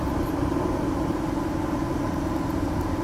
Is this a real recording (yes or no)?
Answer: no